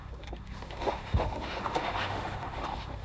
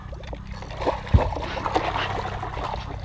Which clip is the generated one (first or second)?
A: first